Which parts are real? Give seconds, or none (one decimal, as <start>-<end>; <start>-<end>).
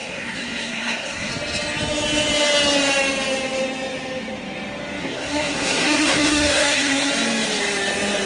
1.3-5.0; 7.1-8.2